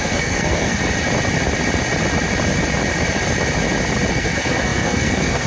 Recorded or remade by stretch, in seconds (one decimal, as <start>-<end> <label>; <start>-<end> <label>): 0.0-0.8 remade; 0.8-4.1 recorded; 4.1-5.5 remade